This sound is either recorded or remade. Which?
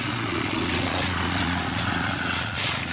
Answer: remade